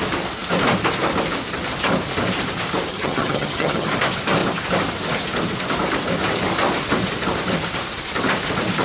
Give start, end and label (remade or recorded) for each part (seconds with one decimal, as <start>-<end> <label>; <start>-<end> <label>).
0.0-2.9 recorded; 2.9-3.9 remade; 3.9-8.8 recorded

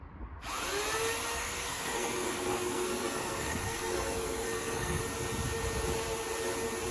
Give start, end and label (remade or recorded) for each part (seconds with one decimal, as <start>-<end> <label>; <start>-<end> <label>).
0.0-1.3 recorded; 1.3-5.0 remade; 5.0-6.9 recorded

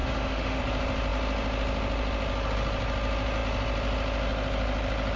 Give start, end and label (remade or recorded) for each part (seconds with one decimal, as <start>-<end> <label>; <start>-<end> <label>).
0.0-0.6 remade; 0.6-5.2 recorded

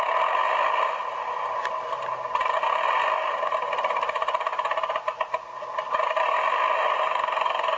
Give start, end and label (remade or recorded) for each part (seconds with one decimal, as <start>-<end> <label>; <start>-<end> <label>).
0.0-7.8 recorded

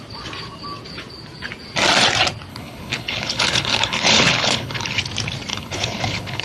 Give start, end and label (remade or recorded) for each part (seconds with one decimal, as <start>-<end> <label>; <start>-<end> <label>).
0.0-2.5 recorded; 2.5-5.0 remade; 5.0-5.5 recorded; 5.5-6.4 remade

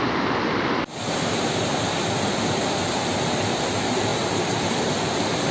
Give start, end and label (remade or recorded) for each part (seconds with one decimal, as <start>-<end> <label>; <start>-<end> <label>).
0.0-4.1 recorded; 4.1-4.9 remade; 4.9-5.5 recorded

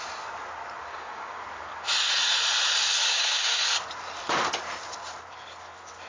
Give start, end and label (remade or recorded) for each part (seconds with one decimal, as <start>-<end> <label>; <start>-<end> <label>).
0.0-0.9 recorded; 0.9-1.4 remade; 1.4-3.0 recorded; 3.0-3.6 remade; 3.6-6.1 recorded

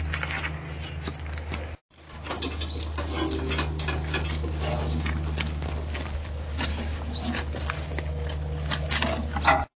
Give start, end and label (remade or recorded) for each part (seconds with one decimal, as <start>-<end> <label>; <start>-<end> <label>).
0.0-9.8 recorded